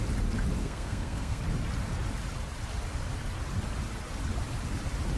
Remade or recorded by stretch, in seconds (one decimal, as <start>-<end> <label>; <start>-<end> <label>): 0.0-0.6 recorded; 0.6-1.4 remade; 1.4-5.2 recorded